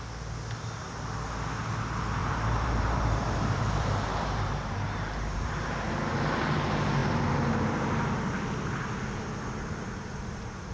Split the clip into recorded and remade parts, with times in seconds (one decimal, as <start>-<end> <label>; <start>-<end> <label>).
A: 0.0-2.2 recorded; 2.2-5.5 remade; 5.5-10.7 recorded